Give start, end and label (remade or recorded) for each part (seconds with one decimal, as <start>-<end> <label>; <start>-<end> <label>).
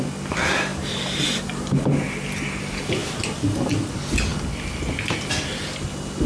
0.0-0.7 recorded; 0.7-1.9 remade; 1.9-6.3 recorded